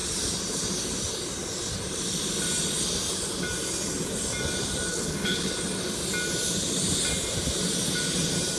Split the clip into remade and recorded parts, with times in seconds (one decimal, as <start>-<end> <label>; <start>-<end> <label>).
0.0-4.9 recorded; 4.9-5.5 remade; 5.5-8.6 recorded